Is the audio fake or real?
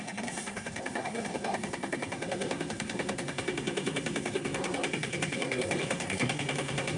fake